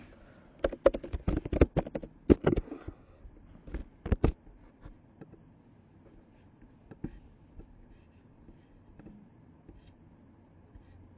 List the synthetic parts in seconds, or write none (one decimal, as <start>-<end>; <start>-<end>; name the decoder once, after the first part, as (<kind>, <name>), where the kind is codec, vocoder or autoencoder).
2.4-3.2 (codec, SNAC)